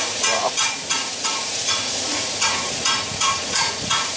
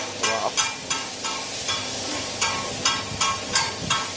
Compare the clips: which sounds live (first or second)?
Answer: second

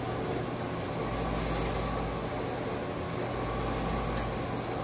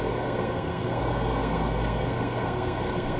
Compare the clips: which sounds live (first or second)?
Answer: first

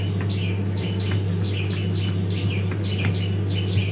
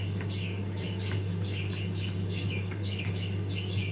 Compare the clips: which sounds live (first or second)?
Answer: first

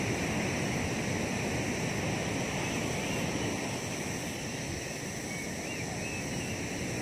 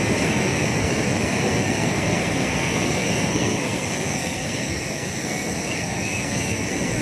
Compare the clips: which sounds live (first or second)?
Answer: first